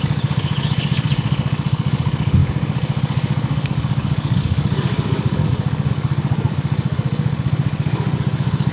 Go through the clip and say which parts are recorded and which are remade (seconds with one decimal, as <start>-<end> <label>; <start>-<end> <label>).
0.0-8.7 remade